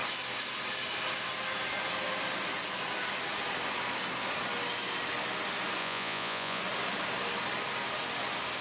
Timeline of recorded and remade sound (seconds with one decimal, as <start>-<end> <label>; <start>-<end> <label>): 0.0-5.8 recorded; 5.8-6.6 remade; 6.6-8.6 recorded